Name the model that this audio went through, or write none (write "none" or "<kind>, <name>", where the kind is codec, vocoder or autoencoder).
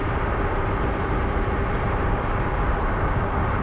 vocoder, BigVGAN v2